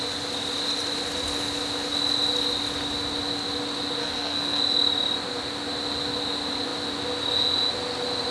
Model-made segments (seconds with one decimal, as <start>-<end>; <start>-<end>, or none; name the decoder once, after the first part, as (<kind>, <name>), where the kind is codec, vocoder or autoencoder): 4.0-4.6 (codec, SNAC)